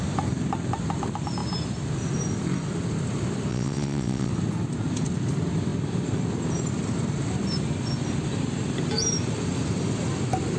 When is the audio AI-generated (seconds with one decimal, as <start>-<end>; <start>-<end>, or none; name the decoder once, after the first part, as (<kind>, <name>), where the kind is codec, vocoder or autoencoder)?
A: 3.5-4.3 (vocoder, WaveNeXt)